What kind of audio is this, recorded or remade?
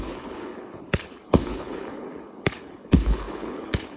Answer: remade